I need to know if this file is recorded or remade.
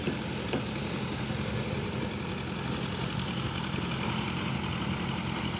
recorded